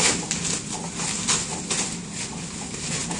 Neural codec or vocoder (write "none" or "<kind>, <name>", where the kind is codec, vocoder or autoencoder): none